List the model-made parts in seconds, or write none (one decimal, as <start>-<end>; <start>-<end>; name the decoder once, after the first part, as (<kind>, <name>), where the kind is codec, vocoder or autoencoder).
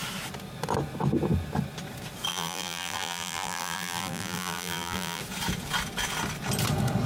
2.3-5.2 (vocoder, BigVGAN v2)